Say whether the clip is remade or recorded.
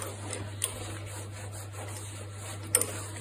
recorded